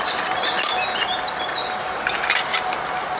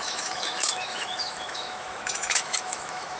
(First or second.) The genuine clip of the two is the first